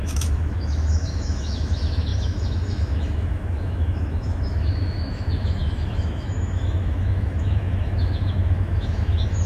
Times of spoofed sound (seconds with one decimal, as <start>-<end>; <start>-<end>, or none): 0.0-9.5